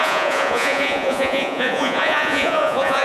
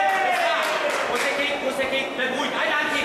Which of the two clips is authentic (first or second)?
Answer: second